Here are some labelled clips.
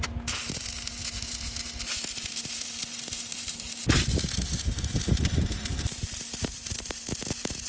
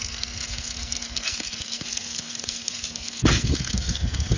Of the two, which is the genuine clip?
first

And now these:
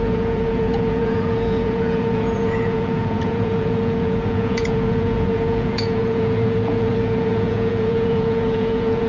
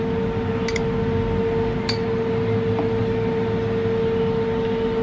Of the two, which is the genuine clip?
second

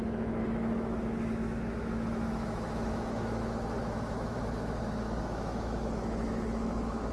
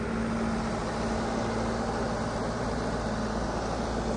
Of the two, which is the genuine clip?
second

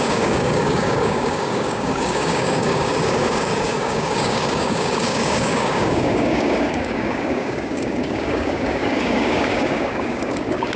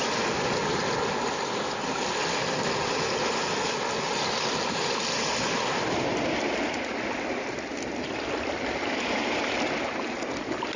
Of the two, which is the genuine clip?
second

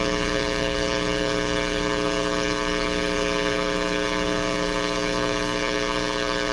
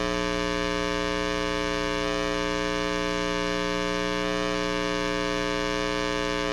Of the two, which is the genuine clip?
second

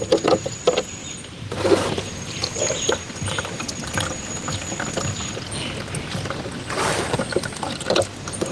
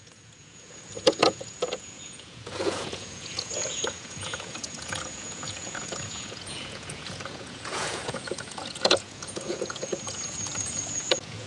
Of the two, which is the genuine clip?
first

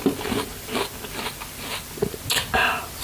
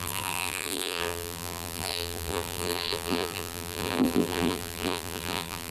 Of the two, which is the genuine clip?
first